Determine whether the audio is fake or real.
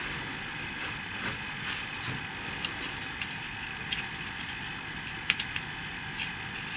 real